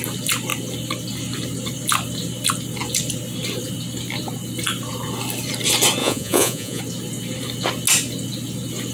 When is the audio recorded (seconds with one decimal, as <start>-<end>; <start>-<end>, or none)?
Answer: 0.0-6.0; 6.8-8.9